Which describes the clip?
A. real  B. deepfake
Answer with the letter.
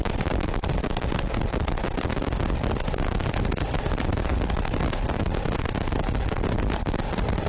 A